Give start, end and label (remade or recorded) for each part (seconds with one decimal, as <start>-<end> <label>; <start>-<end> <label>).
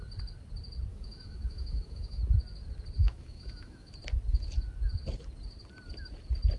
0.0-0.9 recorded; 0.9-2.2 remade; 2.2-3.0 recorded; 3.0-3.9 remade; 3.9-6.6 recorded